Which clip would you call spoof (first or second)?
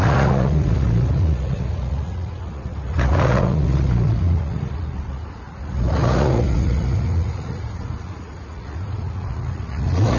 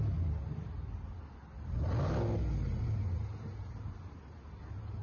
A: first